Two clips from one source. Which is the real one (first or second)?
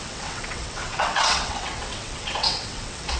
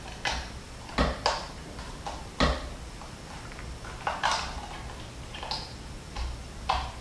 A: second